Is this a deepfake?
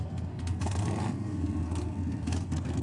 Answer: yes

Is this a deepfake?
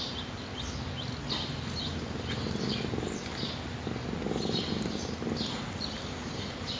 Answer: no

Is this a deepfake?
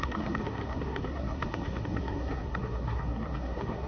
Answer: yes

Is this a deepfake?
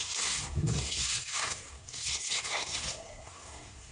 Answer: yes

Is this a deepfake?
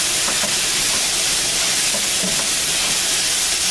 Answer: no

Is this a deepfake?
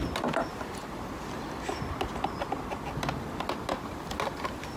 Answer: no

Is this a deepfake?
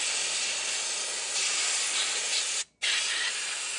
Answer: no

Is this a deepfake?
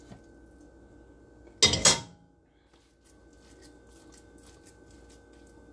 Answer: no